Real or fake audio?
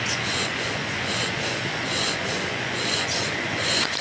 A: fake